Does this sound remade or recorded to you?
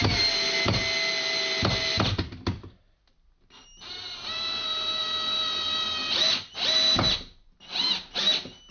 recorded